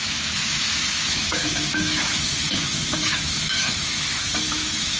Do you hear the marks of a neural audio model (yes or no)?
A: yes